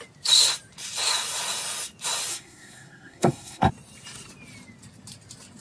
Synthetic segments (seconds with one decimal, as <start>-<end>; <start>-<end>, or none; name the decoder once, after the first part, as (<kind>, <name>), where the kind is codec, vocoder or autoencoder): 2.3-3.7 (codec, SNAC)

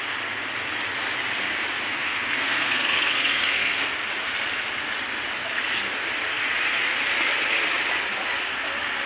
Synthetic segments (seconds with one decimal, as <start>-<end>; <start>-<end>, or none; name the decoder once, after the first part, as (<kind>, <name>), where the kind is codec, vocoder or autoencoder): 1.9-3.9 (codec, SNAC)